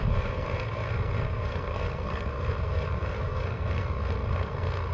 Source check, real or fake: fake